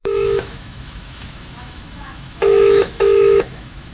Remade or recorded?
remade